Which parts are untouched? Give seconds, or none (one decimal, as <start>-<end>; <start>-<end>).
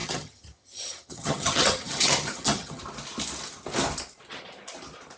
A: 2.8-5.2